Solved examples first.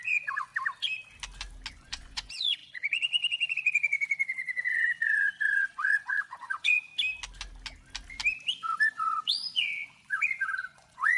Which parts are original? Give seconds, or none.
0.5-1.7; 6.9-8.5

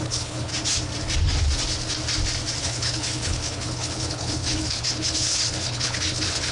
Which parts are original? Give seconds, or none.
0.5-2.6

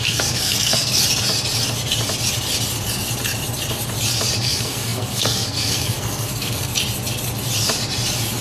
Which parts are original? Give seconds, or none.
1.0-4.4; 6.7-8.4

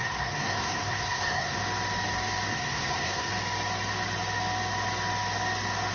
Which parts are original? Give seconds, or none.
1.6-2.5; 3.3-5.9